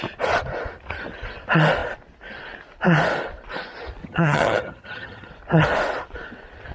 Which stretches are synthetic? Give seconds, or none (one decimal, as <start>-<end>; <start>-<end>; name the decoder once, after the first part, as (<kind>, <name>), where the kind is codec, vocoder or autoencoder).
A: 4.0-5.3 (vocoder, HiFi-GAN)